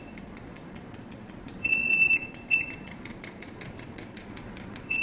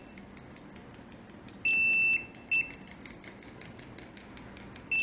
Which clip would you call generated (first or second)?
first